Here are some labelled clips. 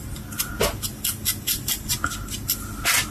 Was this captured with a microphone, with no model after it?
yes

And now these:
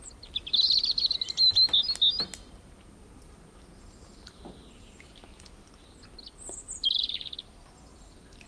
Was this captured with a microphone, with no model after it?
yes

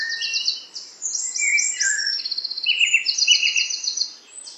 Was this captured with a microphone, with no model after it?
yes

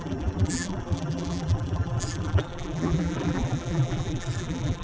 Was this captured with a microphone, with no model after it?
no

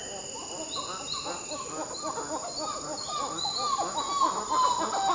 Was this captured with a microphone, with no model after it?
yes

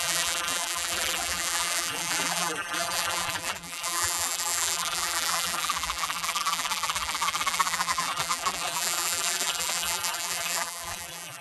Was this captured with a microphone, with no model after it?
no